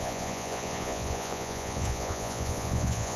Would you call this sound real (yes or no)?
no